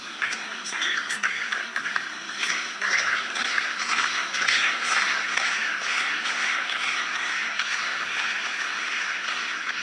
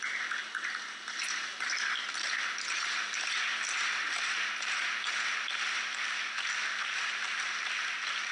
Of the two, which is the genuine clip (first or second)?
second